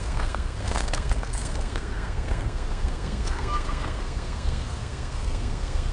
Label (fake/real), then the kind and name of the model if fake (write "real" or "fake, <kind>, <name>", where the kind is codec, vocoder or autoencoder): fake, codec, SNAC